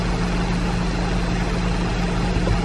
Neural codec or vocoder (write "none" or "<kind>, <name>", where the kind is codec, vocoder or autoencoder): none